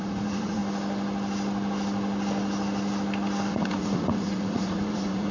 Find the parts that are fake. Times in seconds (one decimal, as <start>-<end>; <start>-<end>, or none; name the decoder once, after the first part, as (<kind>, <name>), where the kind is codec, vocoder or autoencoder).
0.0-0.6 (vocoder, Vocos); 3.5-5.3